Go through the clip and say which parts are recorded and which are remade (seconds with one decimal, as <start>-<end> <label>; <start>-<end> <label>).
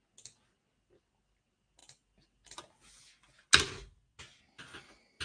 0.0-5.2 recorded